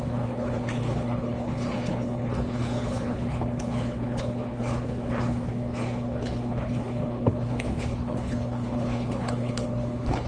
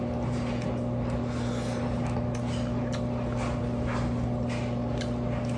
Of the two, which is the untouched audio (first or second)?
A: second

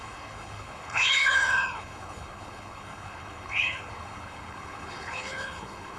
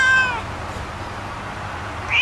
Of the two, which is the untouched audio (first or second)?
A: second